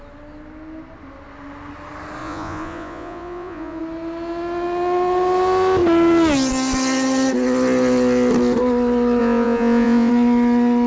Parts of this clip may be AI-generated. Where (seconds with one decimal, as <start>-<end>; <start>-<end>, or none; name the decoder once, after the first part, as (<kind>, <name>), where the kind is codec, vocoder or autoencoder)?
2.2-3.8 (vocoder, Vocos); 9.2-10.1